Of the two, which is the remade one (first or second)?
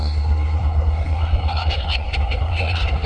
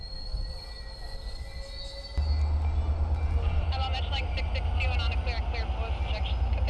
first